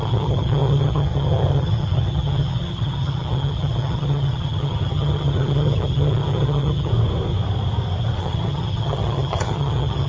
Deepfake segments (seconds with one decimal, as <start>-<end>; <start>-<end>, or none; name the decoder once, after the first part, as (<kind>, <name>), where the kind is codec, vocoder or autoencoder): 0.0-6.9 (vocoder, HiFi-GAN); 8.2-10.1